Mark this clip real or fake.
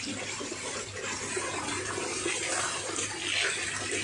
real